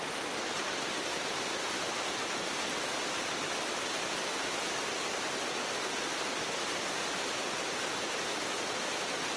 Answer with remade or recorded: recorded